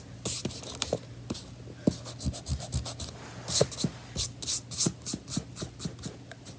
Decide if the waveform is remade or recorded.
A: recorded